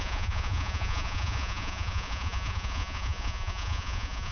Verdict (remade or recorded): remade